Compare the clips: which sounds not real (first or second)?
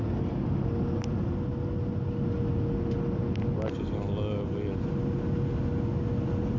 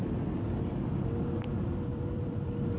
second